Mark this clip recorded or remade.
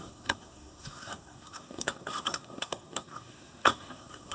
remade